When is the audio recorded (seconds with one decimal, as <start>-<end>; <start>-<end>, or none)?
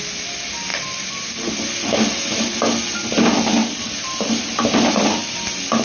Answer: 0.0-5.8